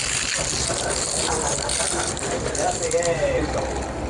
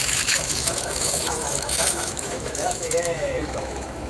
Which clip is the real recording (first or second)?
first